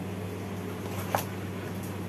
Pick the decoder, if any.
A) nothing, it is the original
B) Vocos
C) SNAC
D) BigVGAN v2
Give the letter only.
A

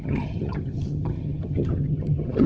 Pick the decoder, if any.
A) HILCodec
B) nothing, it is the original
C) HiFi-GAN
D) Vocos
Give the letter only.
C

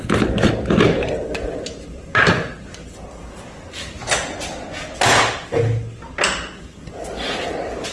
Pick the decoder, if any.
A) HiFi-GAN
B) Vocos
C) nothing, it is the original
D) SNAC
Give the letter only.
C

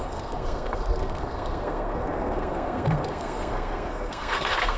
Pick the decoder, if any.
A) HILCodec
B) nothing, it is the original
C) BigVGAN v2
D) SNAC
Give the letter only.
D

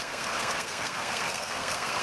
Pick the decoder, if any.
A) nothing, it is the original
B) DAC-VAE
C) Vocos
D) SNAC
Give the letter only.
D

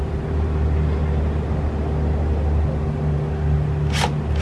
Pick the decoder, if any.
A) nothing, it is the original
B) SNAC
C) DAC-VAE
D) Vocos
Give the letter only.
A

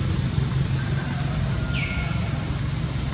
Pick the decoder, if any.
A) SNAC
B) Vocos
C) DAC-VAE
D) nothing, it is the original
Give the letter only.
D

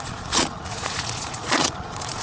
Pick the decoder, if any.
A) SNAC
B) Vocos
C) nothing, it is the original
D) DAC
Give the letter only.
B